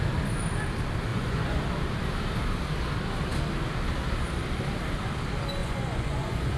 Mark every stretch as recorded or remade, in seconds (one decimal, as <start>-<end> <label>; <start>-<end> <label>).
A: 0.0-1.1 recorded; 1.1-1.6 remade; 1.6-5.6 recorded; 5.6-6.6 remade